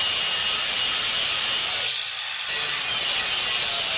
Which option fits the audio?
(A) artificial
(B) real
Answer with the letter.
B